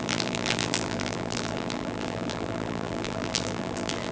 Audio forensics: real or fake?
fake